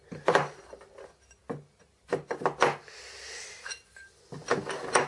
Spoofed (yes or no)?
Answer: no